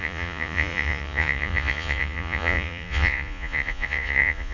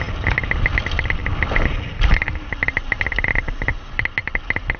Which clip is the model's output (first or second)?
first